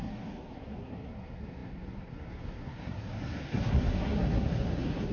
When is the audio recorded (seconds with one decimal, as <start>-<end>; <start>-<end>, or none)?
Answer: none